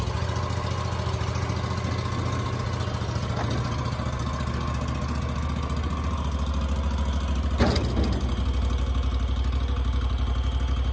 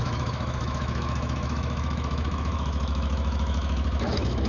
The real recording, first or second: first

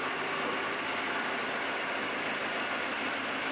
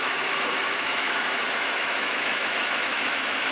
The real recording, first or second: first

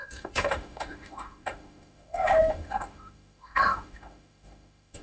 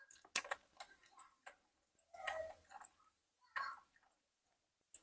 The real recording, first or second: second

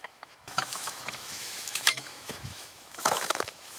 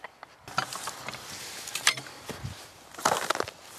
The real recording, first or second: second